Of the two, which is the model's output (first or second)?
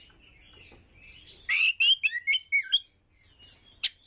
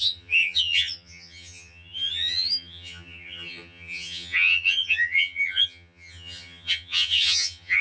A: second